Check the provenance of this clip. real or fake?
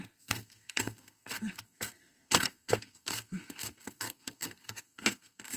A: fake